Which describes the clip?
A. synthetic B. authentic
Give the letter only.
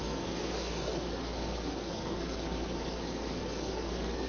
A